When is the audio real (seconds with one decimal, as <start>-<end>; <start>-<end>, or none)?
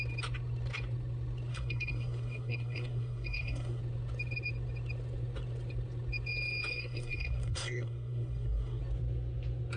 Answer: 0.0-1.5; 3.8-6.7; 8.8-9.8